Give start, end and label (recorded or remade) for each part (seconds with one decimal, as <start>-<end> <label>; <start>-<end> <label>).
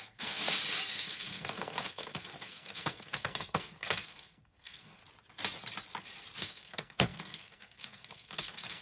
0.0-0.4 remade; 0.4-0.9 recorded; 0.9-5.0 remade; 5.0-6.4 recorded; 6.4-8.8 remade